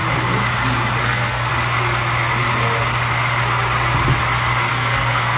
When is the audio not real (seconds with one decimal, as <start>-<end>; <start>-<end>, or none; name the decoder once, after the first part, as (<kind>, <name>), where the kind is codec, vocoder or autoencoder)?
1.0-1.5 (codec, SNAC); 4.7-5.4